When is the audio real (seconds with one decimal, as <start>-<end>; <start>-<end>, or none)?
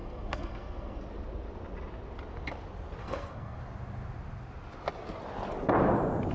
1.0-3.0; 3.6-6.3